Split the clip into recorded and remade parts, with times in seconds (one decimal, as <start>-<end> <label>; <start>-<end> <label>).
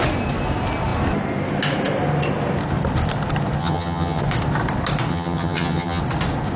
0.0-3.6 recorded; 3.6-4.2 remade; 4.2-5.1 recorded; 5.1-6.0 remade; 6.0-6.6 recorded